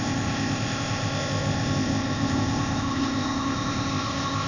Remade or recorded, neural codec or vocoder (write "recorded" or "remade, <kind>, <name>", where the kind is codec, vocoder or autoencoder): remade, codec, ZipCodec